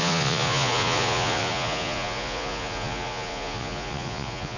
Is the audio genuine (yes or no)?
no